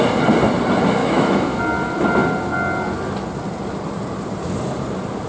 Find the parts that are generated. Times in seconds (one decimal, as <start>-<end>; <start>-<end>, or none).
1.0-1.6